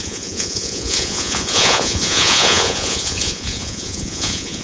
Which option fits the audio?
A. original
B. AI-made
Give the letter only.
B